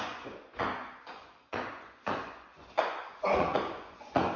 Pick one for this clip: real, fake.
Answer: fake